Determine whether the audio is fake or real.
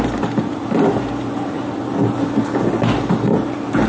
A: real